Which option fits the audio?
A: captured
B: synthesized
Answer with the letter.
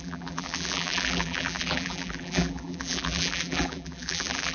B